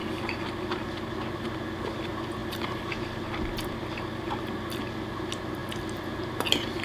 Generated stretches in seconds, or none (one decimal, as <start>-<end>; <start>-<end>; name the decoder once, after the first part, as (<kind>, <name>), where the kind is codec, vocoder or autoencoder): none